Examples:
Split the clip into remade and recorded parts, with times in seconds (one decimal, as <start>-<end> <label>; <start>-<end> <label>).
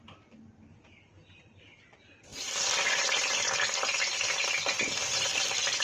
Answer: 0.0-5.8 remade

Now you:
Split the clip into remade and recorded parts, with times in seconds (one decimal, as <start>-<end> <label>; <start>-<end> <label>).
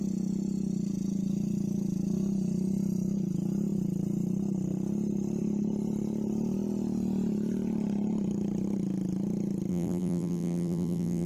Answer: 0.0-9.7 recorded; 9.7-11.3 remade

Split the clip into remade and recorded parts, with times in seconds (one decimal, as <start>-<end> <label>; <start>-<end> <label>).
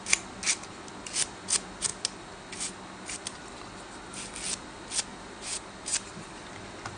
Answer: 0.0-5.1 recorded; 5.1-6.3 remade; 6.3-7.0 recorded